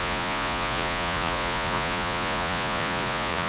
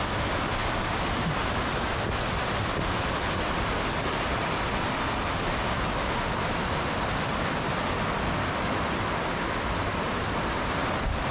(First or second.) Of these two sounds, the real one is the second